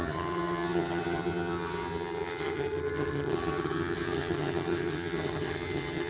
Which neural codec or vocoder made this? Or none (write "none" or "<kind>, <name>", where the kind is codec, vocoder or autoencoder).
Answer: vocoder, HiFi-GAN